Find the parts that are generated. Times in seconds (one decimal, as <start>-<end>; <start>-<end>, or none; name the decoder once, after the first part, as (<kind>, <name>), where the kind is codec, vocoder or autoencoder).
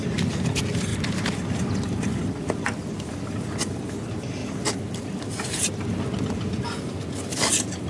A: none